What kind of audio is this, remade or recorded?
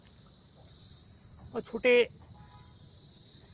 recorded